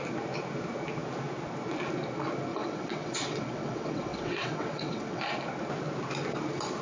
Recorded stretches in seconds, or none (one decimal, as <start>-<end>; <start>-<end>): 0.0-2.5; 5.2-6.8